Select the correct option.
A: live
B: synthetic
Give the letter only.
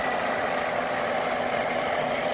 A